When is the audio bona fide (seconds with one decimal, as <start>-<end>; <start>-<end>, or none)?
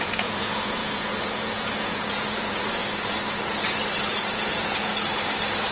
2.8-3.9; 4.9-5.7